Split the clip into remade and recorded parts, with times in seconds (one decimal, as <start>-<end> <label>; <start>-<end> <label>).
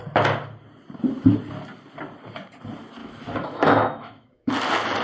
0.0-3.0 recorded; 3.0-4.5 remade; 4.5-5.0 recorded